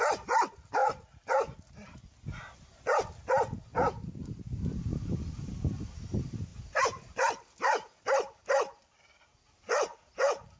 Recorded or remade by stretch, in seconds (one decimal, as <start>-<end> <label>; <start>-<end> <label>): 0.0-10.6 recorded